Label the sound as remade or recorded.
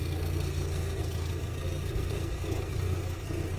remade